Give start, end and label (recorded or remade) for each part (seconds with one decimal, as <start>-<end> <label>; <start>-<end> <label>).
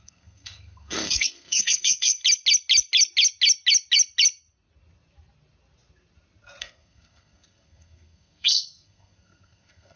0.0-2.2 remade; 2.2-6.6 recorded; 6.6-10.0 remade